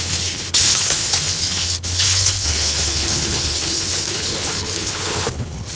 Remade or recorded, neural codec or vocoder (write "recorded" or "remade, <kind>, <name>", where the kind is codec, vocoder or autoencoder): remade, codec, HILCodec